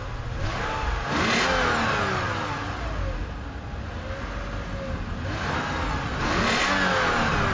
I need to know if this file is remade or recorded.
recorded